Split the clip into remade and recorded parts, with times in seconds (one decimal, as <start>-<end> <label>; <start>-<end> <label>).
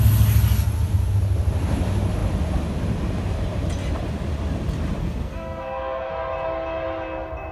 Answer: 0.0-5.0 recorded; 5.0-6.1 remade; 6.1-7.5 recorded